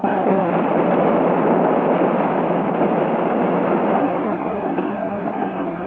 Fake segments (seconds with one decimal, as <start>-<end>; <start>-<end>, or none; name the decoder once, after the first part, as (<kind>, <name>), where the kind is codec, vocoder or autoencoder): 0.0-0.5 (codec, SNAC); 4.0-5.9